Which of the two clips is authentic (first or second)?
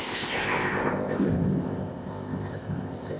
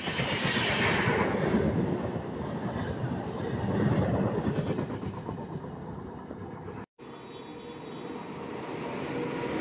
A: second